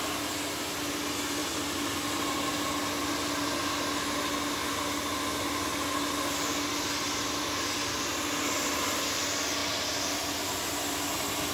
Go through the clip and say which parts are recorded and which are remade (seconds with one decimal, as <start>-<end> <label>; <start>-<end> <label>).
0.0-1.4 recorded; 1.4-1.9 remade; 1.9-11.5 recorded